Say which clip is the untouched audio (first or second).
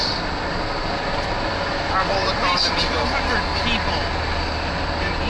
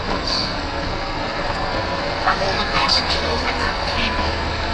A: first